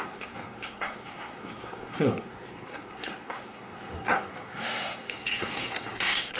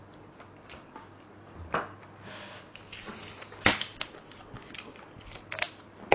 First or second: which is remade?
first